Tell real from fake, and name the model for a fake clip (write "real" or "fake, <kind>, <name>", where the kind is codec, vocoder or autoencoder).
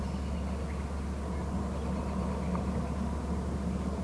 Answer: real